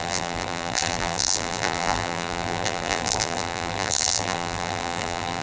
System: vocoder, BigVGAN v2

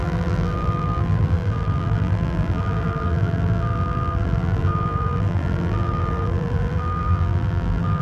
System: vocoder, BigVGAN v2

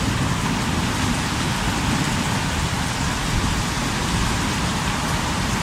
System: none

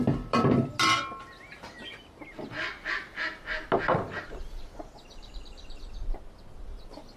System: none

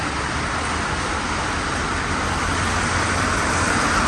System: none